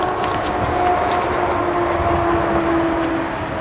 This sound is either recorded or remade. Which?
recorded